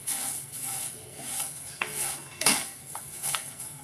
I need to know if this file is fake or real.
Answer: fake